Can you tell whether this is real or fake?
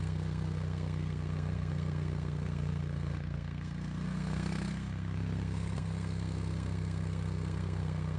fake